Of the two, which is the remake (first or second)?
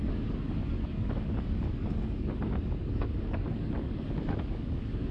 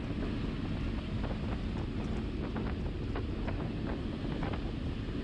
first